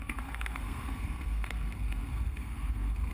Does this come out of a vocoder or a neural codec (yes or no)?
yes